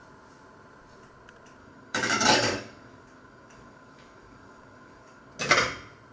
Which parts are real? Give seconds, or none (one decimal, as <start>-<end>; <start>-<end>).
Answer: 0.0-1.6; 5.3-6.1